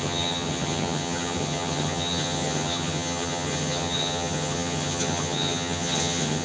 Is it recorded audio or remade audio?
remade